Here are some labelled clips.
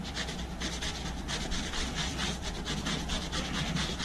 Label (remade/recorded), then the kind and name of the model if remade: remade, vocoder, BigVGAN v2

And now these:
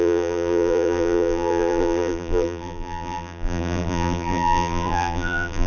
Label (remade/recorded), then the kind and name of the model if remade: remade, vocoder, BigVGAN v2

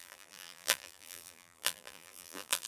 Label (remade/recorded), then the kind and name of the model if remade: remade, vocoder, BigVGAN v2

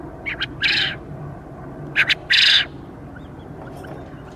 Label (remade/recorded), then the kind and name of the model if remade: recorded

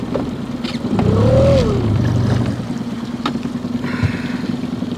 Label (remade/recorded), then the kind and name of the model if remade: recorded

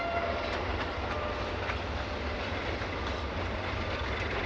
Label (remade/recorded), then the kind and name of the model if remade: recorded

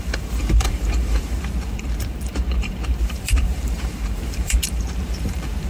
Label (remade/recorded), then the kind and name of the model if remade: remade, vocoder, BigVGAN v2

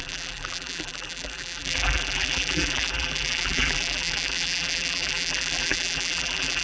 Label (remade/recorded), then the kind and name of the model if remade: remade, vocoder, BigVGAN v2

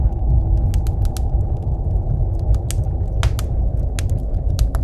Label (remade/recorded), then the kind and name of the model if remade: recorded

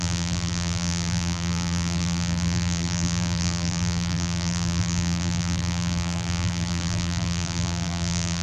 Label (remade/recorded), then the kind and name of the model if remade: remade, vocoder, BigVGAN v2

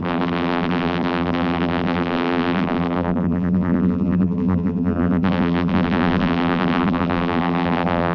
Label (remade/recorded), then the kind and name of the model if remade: remade, vocoder, BigVGAN v2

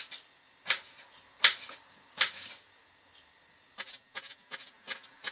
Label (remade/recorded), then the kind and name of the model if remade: recorded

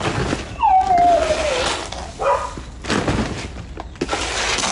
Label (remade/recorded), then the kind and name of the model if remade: recorded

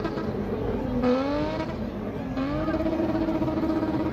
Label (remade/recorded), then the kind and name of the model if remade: recorded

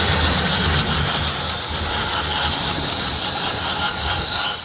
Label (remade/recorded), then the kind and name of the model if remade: recorded